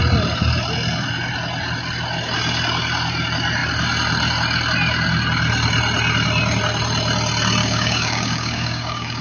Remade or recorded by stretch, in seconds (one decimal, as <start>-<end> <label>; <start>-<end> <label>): 0.0-7.6 recorded; 7.6-9.2 remade